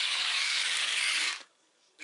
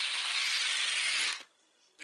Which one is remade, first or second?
first